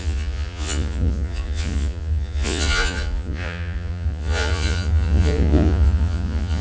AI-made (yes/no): yes